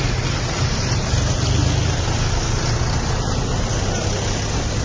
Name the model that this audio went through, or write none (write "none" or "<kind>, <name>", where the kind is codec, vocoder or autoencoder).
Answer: none